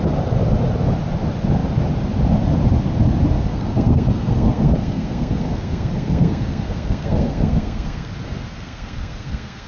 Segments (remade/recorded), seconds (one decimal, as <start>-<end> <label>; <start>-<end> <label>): 0.0-3.5 recorded; 3.5-8.1 remade; 8.1-8.5 recorded; 8.5-9.7 remade